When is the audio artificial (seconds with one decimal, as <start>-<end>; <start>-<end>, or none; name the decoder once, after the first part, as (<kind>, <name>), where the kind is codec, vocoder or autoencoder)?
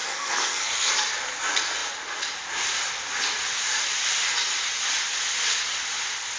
0.0-0.9 (codec, SNAC)